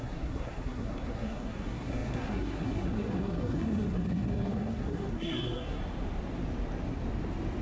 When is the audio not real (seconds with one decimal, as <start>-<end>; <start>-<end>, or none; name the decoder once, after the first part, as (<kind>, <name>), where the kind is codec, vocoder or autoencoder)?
0.0-5.8 (codec, SNAC)